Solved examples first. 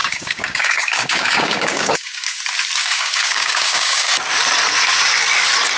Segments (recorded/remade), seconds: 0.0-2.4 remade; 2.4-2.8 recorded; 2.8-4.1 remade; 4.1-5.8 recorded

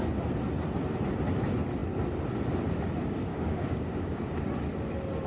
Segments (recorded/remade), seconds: 0.0-3.3 recorded; 3.3-4.4 remade; 4.4-5.3 recorded